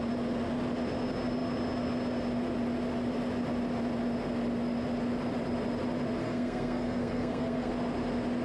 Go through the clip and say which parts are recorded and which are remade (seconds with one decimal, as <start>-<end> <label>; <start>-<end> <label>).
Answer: 0.0-6.2 recorded; 6.2-7.7 remade; 7.7-8.4 recorded